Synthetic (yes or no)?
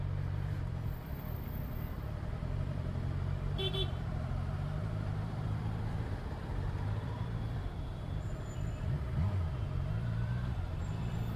yes